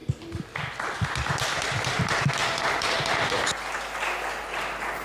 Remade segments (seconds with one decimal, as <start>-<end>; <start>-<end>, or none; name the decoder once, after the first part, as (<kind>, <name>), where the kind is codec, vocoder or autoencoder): 0.0-1.1 (vocoder, BigVGAN v2); 2.4-4.6

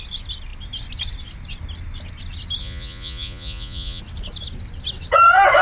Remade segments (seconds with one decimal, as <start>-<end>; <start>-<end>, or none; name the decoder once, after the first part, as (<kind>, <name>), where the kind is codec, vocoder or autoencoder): 2.6-4.0 (vocoder, Vocos)

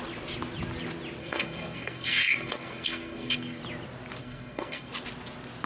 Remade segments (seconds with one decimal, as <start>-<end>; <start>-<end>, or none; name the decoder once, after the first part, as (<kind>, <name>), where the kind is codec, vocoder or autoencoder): 1.2-3.6 (codec, SNAC); 4.2-4.9

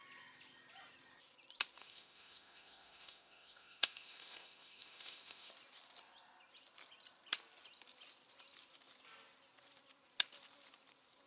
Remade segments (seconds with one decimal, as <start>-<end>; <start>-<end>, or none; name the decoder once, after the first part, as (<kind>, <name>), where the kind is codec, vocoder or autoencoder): 1.8-5.5 (autoencoder, DAC-VAE)

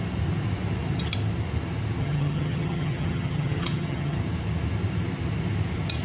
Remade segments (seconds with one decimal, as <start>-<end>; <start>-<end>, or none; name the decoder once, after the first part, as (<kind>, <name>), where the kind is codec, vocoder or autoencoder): 2.0-4.2 (vocoder, HiFi-GAN)